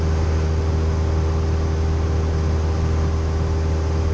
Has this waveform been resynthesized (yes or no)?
no